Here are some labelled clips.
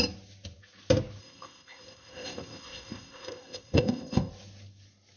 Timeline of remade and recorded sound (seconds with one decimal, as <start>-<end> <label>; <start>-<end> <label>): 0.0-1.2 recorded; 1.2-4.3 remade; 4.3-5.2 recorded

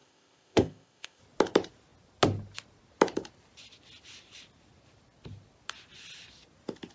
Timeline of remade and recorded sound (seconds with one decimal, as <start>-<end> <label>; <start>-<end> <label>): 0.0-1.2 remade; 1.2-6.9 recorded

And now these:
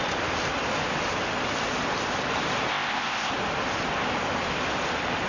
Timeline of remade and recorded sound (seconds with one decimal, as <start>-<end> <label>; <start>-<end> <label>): 0.0-2.7 recorded; 2.7-3.3 remade; 3.3-5.3 recorded

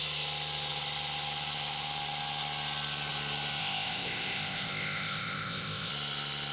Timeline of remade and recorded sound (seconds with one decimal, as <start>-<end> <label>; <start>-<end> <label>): 0.0-3.6 recorded; 3.6-5.9 remade; 5.9-6.5 recorded